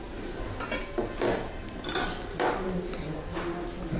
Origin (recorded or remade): recorded